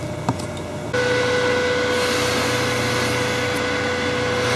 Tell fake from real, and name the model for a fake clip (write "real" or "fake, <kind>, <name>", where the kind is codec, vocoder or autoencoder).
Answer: real